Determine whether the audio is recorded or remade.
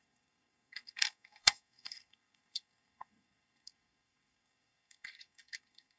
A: remade